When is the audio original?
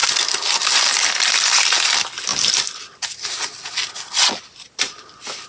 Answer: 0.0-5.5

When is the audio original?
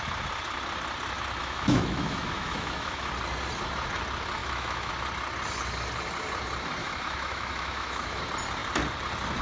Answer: 0.0-1.4; 3.1-4.4; 4.9-6.8; 8.2-9.4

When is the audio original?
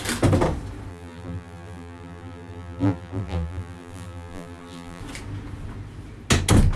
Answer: 0.0-0.9; 5.0-6.8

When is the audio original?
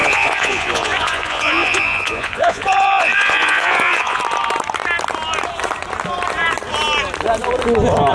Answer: 4.2-8.1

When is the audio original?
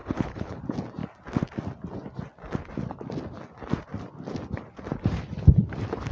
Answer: 0.6-6.1